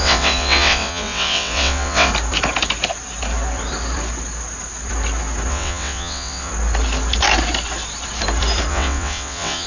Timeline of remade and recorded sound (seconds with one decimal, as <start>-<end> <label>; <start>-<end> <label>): 0.0-2.1 remade; 2.1-5.5 recorded; 5.5-6.5 remade; 6.5-8.7 recorded; 8.7-9.7 remade